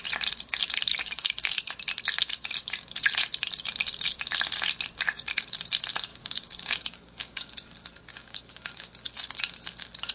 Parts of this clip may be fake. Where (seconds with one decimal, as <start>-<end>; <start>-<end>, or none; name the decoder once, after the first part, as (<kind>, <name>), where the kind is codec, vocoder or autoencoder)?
0.9-1.7 (codec, DAC); 6.1-7.5; 8.1-8.9